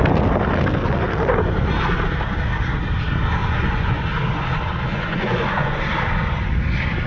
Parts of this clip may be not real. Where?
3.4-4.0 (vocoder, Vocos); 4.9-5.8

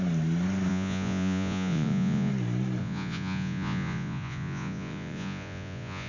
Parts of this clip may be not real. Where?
0.7-2.3 (vocoder, Vocos); 2.8-6.1

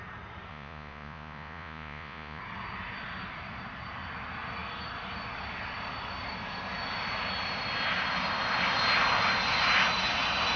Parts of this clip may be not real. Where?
0.5-2.4 (vocoder, Vocos)

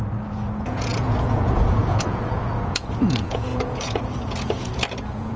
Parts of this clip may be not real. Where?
0.0-5.4 (vocoder, Vocos)

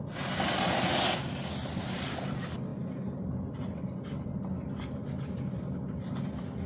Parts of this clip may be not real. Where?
none

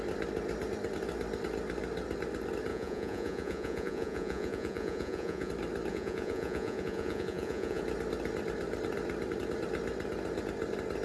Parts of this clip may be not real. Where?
2.7-5.5 (vocoder, Vocos); 5.9-7.8